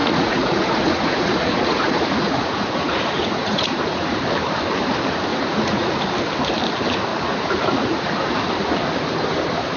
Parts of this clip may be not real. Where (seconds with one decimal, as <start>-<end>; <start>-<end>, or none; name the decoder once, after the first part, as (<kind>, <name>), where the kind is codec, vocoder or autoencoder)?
0.0-4.2 (vocoder, Vocos); 5.3-6.0; 7.1-8.5